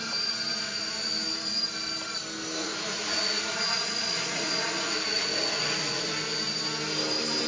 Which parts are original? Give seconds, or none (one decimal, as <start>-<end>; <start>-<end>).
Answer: 0.0-2.6; 6.1-7.5